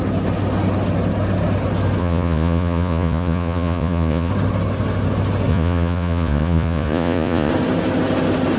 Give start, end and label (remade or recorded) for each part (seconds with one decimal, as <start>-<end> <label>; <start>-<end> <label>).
0.0-2.0 recorded; 2.0-4.3 remade; 4.3-5.5 recorded; 5.5-7.5 remade; 7.5-8.6 recorded